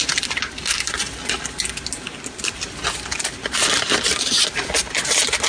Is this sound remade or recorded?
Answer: recorded